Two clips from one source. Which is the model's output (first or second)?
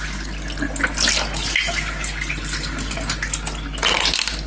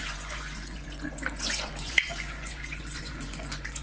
second